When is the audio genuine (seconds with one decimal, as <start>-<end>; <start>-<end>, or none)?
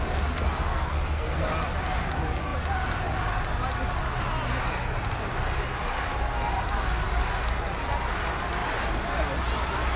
0.0-0.7; 1.5-10.0